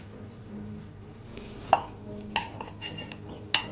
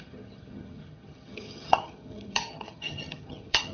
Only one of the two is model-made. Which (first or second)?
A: second